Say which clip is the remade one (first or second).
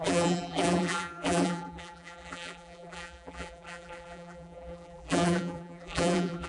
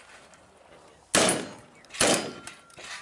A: first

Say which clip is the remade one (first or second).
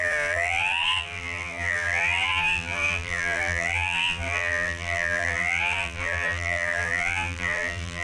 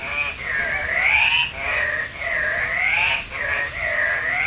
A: first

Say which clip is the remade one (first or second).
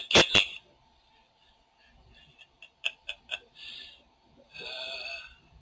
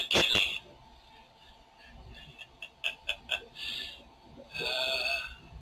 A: first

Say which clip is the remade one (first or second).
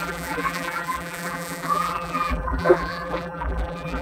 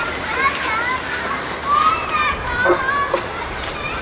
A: first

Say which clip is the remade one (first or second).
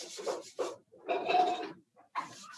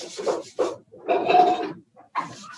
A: first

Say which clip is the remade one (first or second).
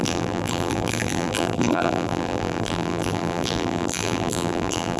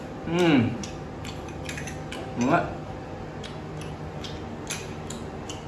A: first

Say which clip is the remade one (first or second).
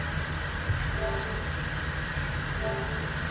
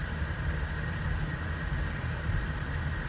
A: second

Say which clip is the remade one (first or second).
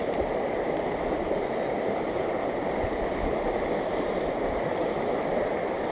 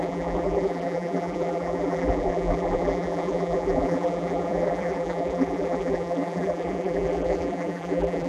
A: second